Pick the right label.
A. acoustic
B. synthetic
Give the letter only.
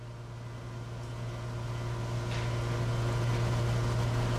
A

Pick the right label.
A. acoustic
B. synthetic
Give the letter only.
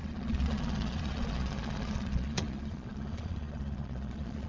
B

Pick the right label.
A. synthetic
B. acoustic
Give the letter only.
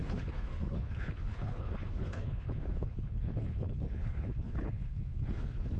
A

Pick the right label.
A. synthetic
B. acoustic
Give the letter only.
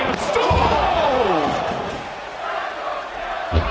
A